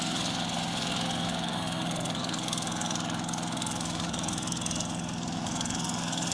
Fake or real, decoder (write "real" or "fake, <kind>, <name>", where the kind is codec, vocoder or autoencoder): fake, codec, SNAC